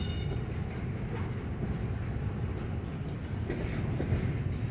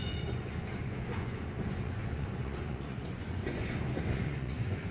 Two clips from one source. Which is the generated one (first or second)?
second